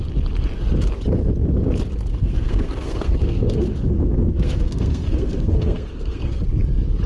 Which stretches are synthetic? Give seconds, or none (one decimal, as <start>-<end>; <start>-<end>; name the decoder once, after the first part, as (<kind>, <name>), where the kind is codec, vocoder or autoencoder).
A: 2.1-6.4 (codec, SNAC)

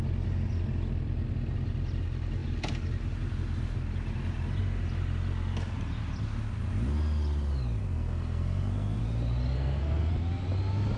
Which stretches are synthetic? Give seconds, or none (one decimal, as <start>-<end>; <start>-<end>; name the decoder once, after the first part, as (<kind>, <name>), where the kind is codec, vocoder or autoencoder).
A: 7.8-9.0 (codec, SNAC); 9.5-10.1